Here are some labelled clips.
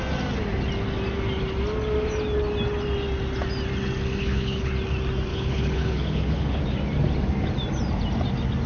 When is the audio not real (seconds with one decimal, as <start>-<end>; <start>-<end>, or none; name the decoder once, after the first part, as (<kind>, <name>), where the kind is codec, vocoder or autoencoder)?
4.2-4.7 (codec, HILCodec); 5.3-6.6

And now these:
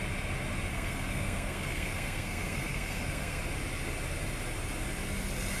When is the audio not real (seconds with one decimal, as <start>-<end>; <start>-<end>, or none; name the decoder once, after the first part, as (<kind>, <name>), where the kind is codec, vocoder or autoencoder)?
0.7-3.4 (codec, SNAC)

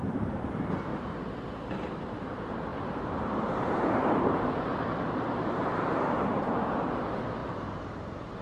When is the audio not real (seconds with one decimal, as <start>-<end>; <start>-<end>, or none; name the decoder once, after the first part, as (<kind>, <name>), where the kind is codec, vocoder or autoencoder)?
0.0-0.9 (vocoder, BigVGAN v2); 1.7-4.7; 5.7-8.4